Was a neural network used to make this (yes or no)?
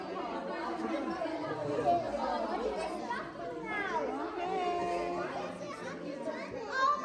no